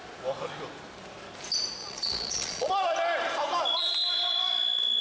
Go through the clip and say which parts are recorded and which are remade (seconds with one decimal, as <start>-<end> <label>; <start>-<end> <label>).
0.0-1.8 recorded; 1.8-2.7 remade; 2.7-5.0 recorded